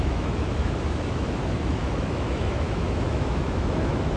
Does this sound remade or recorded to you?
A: remade